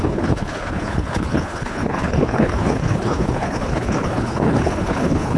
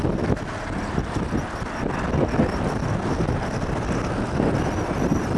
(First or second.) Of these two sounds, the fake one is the first